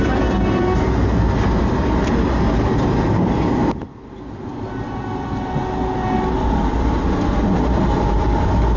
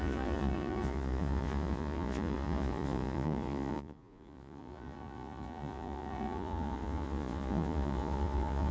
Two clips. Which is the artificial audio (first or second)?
second